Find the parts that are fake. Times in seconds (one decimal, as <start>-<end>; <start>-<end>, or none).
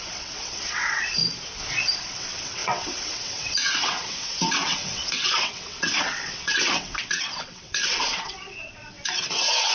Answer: 0.0-1.2; 1.9-9.7